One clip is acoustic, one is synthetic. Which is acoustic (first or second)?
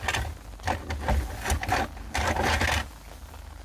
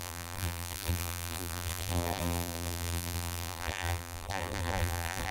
first